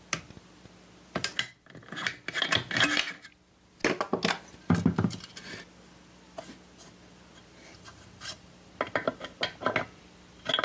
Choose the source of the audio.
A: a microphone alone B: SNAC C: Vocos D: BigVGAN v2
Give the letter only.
A